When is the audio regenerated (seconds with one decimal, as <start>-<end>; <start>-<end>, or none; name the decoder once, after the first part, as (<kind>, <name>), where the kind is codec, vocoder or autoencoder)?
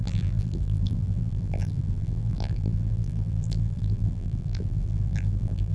0.0-5.7 (vocoder, BigVGAN v2)